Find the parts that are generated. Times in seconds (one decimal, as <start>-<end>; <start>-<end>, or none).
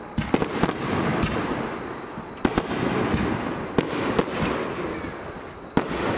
none